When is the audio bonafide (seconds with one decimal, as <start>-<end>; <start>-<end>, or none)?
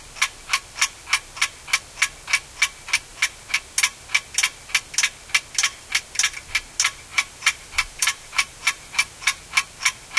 0.0-7.1; 9.4-10.2